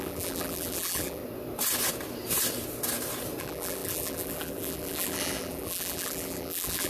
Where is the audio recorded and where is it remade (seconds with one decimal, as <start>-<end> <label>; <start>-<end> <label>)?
0.0-1.2 remade; 1.2-3.4 recorded; 3.4-6.9 remade